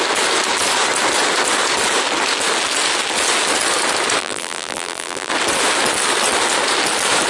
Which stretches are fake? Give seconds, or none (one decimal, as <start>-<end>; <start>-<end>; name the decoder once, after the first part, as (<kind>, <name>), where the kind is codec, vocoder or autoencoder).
4.2-5.3 (vocoder, BigVGAN v2)